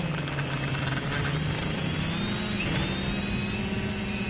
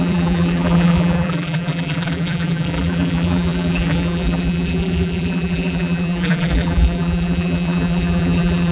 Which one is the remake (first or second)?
second